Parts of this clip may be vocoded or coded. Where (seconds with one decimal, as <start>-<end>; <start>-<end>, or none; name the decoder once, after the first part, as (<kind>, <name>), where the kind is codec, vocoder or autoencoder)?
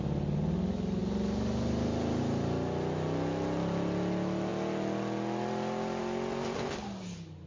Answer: none